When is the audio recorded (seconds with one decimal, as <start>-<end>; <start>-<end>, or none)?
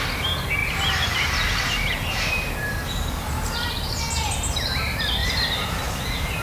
0.0-0.6; 4.0-5.2